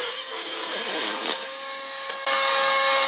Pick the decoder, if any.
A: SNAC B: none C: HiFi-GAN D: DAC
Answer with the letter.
D